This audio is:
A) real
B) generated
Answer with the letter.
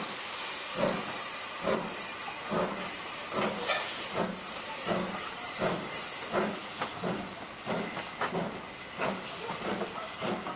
A